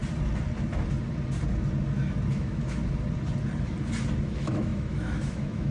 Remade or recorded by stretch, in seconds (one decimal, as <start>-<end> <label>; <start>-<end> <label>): 0.0-2.3 recorded; 2.3-2.8 remade; 2.8-4.2 recorded; 4.2-5.7 remade